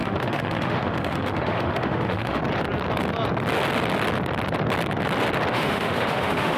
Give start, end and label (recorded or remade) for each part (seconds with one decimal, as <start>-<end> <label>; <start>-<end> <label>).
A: 0.0-2.4 remade; 2.4-5.5 recorded; 5.5-6.6 remade

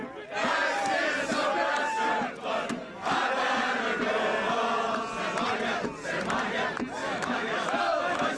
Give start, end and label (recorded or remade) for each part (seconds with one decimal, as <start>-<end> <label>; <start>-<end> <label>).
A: 0.0-7.0 recorded; 7.0-8.4 remade

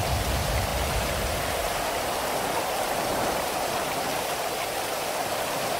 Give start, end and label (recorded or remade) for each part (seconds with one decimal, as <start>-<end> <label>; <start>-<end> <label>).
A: 0.0-5.8 recorded

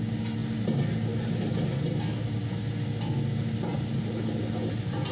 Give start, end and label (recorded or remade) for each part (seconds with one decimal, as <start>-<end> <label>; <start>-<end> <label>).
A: 0.0-5.1 recorded

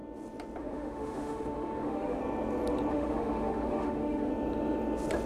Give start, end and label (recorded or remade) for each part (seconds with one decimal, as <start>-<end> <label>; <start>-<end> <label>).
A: 0.0-0.6 recorded; 0.6-2.2 remade; 2.2-2.9 recorded; 2.9-4.3 remade; 4.3-5.3 recorded

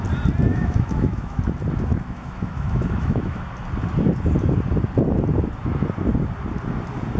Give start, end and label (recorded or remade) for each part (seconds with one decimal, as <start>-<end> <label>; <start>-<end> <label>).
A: 0.0-0.5 recorded; 0.5-1.4 remade; 1.4-1.9 recorded; 1.9-3.5 remade; 3.5-7.2 recorded

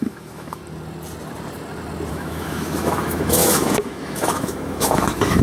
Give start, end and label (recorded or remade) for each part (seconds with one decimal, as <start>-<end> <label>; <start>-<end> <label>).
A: 0.0-0.6 remade; 0.6-2.1 recorded; 2.1-5.4 remade